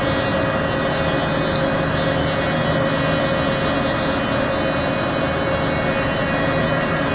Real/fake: real